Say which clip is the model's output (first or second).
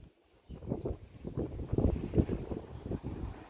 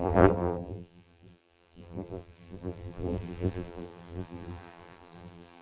second